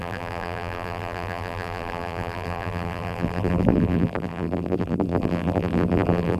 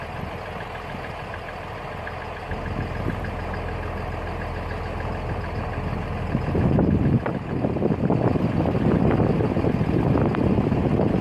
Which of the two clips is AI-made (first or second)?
first